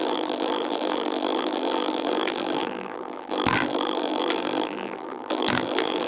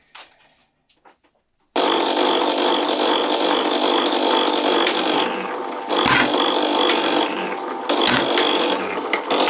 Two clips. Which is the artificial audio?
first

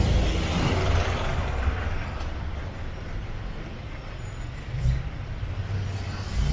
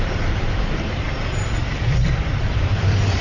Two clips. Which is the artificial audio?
second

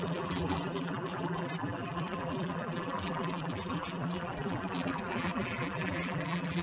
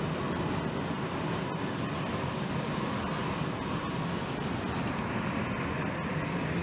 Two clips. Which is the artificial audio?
first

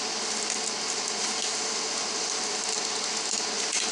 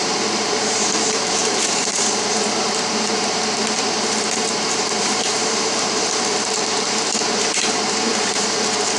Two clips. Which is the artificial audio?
second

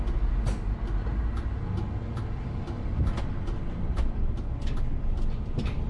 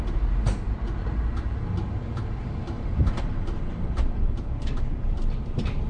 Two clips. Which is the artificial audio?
second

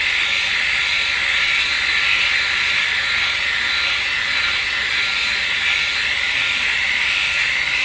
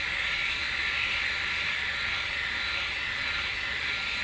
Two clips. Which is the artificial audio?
second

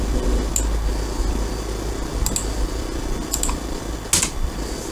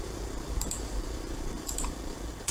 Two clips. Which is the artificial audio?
second